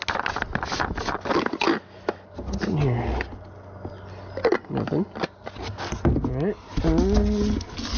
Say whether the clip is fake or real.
real